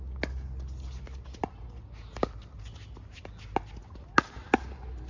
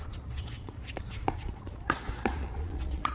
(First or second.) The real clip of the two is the first